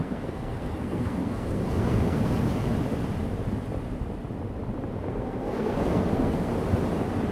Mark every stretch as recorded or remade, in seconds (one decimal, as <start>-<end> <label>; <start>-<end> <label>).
0.0-2.7 remade; 2.7-5.1 recorded; 5.1-6.5 remade; 6.5-7.3 recorded